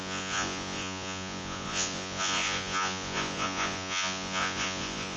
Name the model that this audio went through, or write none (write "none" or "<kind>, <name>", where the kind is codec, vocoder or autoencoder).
vocoder, Vocos